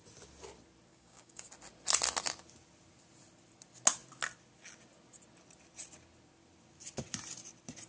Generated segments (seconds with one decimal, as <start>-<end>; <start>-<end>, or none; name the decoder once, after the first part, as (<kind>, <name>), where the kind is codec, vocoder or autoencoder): 0.9-1.5 (codec, DAC)

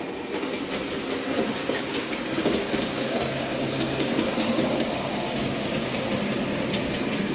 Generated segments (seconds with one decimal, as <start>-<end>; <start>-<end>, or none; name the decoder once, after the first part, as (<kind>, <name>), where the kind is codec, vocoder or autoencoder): 1.6-6.0 (codec, DAC)

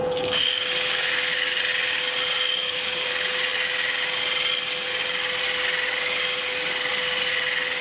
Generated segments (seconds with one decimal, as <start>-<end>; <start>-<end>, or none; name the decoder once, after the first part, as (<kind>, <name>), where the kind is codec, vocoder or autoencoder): 0.0-1.6 (codec, DAC); 2.6-3.1

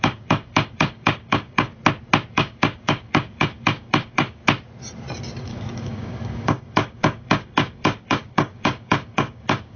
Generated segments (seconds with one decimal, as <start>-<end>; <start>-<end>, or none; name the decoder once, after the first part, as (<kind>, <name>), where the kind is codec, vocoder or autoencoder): 0.0-1.7 (codec, DAC); 2.3-4.4; 5.4-9.8

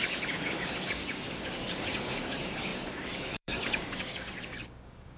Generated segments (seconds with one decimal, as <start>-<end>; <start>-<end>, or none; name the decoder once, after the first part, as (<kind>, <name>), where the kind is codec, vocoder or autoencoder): 0.0-5.2 (codec, DAC)

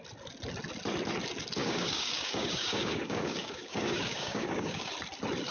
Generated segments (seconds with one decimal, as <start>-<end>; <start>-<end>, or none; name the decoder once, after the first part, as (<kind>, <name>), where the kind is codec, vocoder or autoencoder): 1.6-4.9 (codec, DAC)

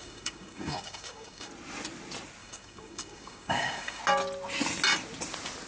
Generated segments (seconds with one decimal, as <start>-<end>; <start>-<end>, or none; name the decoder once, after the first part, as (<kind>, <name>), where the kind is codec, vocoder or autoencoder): 0.0-1.5 (codec, DAC); 2.4-4.0

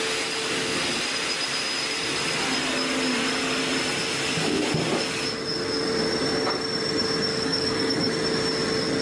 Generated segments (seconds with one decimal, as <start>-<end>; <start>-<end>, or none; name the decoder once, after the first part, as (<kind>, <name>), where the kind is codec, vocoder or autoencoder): 7.3-8.1 (codec, DAC)